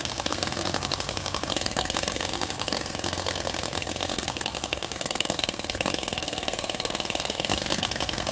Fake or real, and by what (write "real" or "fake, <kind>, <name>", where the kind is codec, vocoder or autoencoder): fake, codec, SNAC